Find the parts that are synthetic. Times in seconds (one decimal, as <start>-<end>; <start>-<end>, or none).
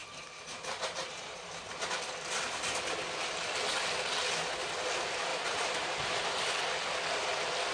0.0-1.8; 5.3-6.6